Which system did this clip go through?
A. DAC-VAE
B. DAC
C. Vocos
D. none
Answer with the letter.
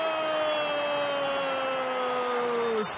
D